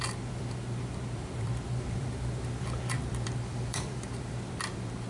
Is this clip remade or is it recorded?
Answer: remade